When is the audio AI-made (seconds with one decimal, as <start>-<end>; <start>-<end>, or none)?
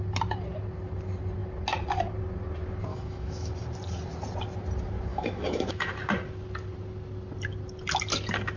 2.9-3.5; 5.1-5.9